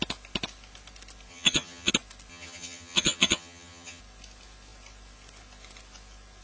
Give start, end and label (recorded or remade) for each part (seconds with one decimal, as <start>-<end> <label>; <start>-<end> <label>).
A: 0.0-1.3 recorded; 1.3-1.9 remade; 1.9-2.3 recorded; 2.3-4.0 remade; 4.0-6.4 recorded